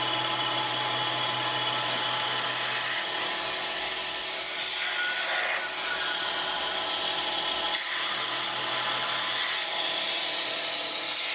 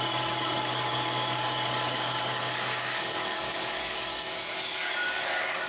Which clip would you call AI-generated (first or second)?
second